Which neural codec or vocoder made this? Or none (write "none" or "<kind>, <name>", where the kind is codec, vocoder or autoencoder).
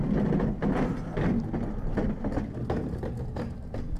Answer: none